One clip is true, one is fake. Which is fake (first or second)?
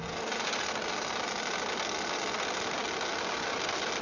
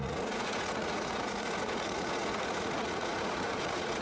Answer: second